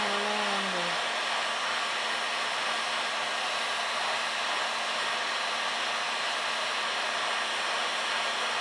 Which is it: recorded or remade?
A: recorded